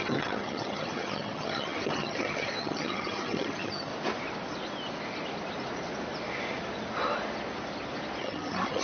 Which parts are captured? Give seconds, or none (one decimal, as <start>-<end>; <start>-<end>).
3.9-8.2